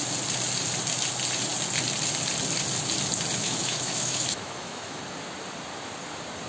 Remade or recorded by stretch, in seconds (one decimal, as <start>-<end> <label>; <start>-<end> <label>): 0.0-3.4 recorded; 3.4-5.0 remade; 5.0-6.5 recorded